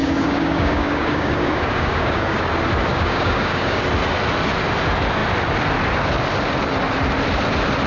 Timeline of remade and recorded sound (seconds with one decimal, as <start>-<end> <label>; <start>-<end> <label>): 0.0-2.4 remade; 2.4-2.9 recorded; 2.9-3.8 remade; 3.8-7.9 recorded